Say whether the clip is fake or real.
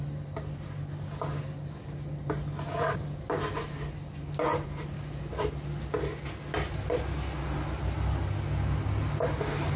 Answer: real